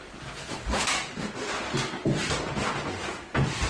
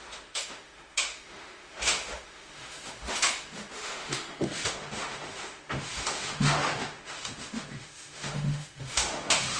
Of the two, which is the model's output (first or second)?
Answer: second